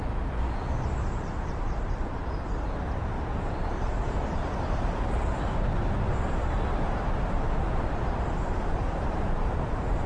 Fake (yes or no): yes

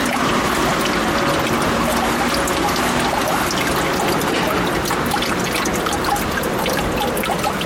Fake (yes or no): no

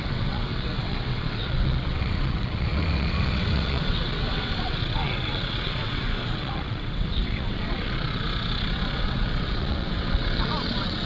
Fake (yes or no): yes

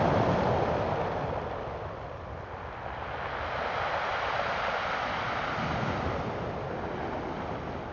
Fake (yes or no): no